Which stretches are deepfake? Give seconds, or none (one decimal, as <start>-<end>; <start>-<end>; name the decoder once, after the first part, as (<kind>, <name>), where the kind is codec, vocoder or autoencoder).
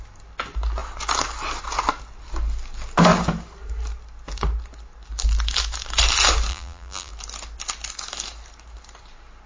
6.5-7.1 (vocoder, BigVGAN v2)